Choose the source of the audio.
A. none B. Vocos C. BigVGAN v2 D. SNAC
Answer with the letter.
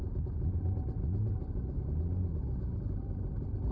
A